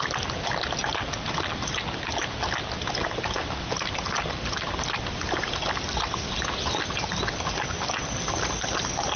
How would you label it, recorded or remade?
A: recorded